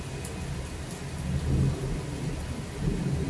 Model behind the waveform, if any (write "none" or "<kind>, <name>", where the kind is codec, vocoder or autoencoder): none